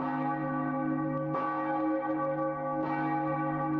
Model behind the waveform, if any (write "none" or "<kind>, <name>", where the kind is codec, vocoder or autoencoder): none